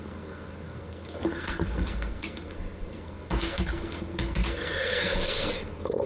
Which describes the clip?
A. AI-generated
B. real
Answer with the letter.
A